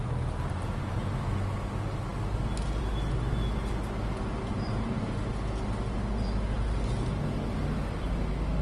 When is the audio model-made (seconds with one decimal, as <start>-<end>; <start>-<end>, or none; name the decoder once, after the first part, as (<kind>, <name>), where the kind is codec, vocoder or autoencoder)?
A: none